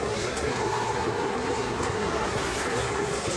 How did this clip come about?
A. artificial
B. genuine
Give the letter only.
A